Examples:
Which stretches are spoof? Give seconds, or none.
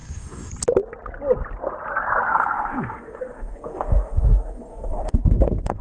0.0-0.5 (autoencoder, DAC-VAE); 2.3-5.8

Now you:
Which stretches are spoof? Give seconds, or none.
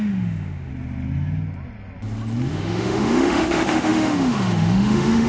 0.0-0.7 (autoencoder, DAC-VAE); 2.5-5.3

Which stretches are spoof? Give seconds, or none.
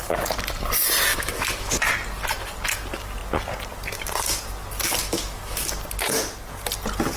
1.1-1.8 (autoencoder, DAC-VAE); 5.0-5.7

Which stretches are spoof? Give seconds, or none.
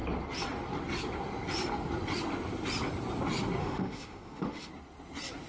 3.6-4.7 (autoencoder, DAC-VAE)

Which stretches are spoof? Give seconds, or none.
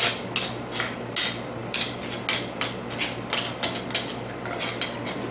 none